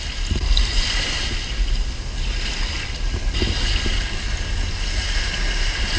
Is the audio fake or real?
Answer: real